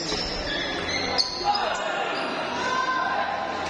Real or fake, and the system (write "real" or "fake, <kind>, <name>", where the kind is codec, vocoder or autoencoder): real